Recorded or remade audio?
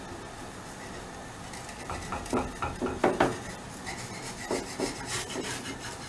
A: recorded